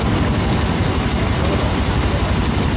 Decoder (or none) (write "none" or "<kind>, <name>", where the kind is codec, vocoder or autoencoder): none